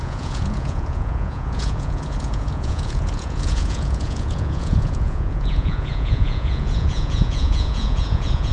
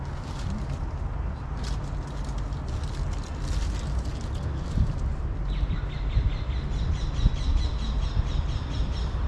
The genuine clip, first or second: second